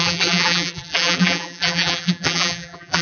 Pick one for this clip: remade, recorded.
remade